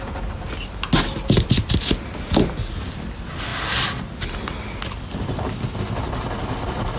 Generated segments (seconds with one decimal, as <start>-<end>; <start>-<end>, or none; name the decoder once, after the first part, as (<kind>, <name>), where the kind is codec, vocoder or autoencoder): none